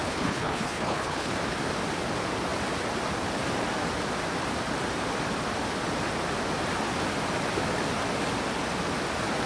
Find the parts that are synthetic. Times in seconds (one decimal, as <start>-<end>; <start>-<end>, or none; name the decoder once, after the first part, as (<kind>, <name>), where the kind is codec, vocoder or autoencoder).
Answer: 0.0-1.3 (codec, HILCodec)